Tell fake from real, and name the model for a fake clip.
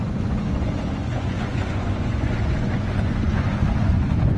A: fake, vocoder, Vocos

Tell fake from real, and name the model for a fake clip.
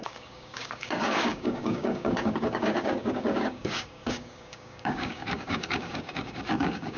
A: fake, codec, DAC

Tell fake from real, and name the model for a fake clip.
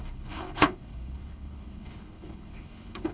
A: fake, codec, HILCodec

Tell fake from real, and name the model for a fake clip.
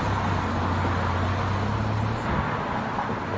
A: real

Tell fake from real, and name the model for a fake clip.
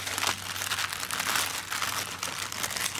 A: real